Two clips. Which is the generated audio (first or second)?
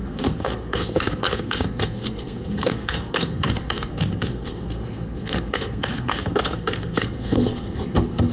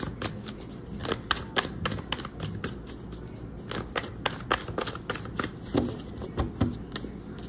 first